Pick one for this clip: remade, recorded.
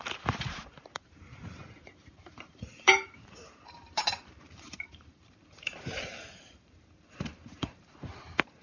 remade